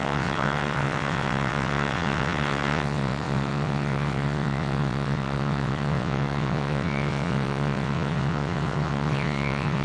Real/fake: fake